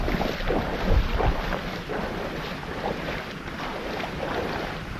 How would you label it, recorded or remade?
recorded